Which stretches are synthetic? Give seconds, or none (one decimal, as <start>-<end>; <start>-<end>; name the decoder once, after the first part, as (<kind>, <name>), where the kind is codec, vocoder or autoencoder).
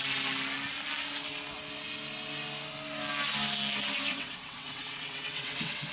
4.1-5.9 (vocoder, WaveNeXt)